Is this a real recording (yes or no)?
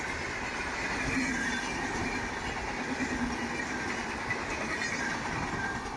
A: yes